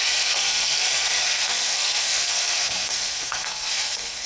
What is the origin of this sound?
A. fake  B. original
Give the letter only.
A